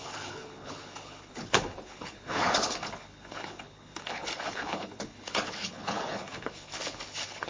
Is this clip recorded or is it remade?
remade